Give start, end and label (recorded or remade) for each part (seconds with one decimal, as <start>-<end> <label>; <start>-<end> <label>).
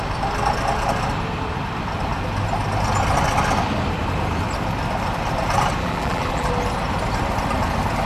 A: 0.0-5.8 recorded; 5.8-6.5 remade; 6.5-8.1 recorded